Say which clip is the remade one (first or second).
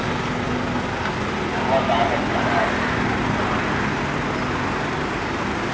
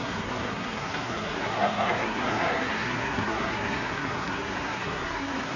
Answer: second